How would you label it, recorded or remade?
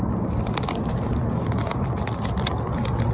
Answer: recorded